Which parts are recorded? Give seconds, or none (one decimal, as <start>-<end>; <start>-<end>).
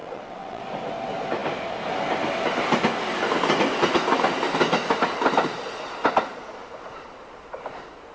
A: 0.6-8.1